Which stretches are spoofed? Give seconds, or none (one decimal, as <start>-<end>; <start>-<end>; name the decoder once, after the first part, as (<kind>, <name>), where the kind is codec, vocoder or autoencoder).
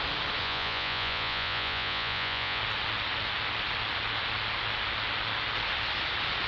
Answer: 0.4-2.6 (vocoder, Vocos)